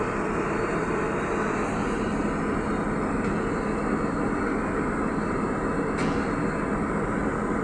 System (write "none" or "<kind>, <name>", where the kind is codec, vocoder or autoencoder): none